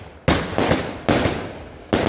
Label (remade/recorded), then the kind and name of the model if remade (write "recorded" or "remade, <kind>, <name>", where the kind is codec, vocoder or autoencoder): recorded